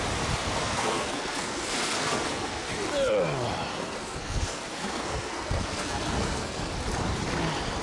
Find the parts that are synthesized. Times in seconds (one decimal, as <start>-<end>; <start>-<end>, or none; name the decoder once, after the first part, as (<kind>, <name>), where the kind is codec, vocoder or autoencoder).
0.6-2.7 (codec, SNAC); 3.7-6.7